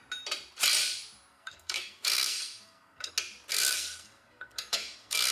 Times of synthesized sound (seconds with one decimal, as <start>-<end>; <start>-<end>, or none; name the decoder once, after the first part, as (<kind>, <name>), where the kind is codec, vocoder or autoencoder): 1.3-3.1 (codec, SNAC); 3.5-5.3